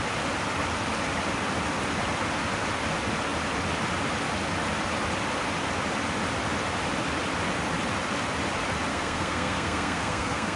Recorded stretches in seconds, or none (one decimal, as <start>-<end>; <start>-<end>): 0.0-8.9

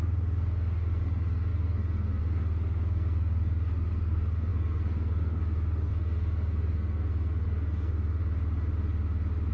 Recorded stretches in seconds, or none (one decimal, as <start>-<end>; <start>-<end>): 8.2-9.5

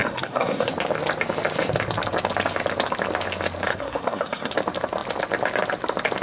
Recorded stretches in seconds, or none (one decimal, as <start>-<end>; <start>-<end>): 0.7-3.7; 4.5-6.2

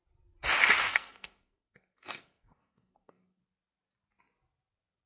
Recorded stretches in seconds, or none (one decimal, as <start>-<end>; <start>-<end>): 0.0-0.9; 3.4-5.1